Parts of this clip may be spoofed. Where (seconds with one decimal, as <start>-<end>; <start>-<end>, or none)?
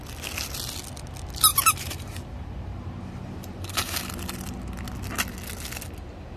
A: 1.5-4.1